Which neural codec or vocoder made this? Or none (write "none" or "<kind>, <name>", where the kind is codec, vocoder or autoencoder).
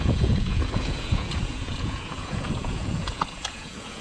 vocoder, Vocos